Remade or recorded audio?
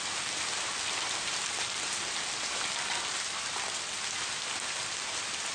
recorded